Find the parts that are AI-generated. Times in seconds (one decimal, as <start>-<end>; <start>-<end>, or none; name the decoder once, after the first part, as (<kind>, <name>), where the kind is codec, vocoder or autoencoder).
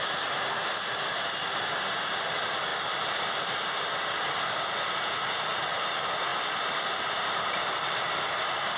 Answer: none